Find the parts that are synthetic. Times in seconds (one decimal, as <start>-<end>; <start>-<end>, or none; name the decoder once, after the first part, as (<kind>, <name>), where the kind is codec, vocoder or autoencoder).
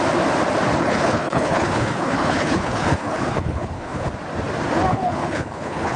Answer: 0.8-4.1 (codec, HILCodec); 4.9-6.0